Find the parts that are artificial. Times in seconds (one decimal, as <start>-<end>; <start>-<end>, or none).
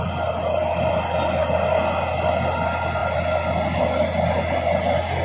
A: none